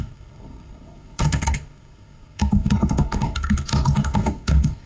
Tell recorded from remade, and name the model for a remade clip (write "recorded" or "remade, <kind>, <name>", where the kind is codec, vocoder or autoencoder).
remade, codec, SNAC